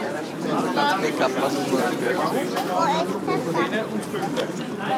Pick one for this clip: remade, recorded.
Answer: remade